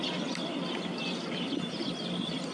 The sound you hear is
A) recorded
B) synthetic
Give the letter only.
A